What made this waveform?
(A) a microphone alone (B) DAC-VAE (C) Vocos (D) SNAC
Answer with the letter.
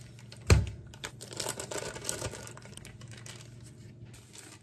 A